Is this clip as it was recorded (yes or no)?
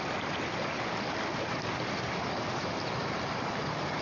yes